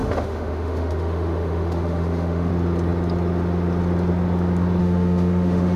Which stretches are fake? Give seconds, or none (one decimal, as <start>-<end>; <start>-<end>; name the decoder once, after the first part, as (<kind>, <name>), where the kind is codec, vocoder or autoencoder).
0.0-2.5 (autoencoder, DAC-VAE); 4.8-5.8